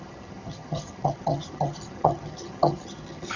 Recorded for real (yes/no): no